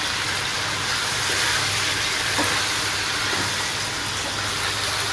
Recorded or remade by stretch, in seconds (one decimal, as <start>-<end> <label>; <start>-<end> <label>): 0.0-0.5 recorded; 0.5-3.6 remade; 3.6-5.1 recorded